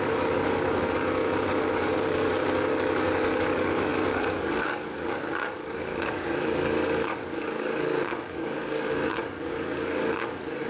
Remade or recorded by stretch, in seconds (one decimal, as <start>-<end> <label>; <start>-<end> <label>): 0.0-10.7 remade